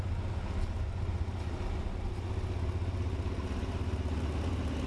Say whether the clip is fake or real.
real